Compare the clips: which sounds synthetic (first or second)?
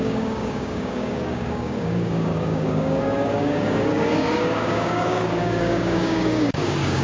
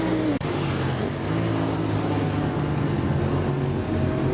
first